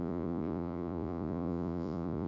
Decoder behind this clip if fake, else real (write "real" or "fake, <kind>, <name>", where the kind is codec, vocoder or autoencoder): fake, vocoder, Vocos